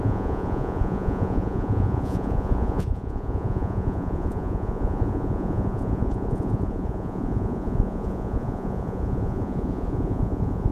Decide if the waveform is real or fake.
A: fake